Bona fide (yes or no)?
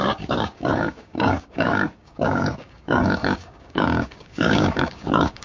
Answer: no